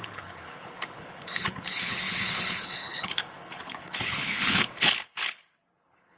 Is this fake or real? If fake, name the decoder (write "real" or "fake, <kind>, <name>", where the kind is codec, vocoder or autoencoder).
fake, codec, HILCodec